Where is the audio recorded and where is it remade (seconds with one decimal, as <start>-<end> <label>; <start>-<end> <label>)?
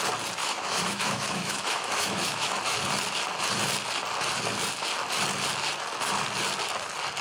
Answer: 0.0-0.4 recorded; 0.4-2.6 remade; 2.6-7.2 recorded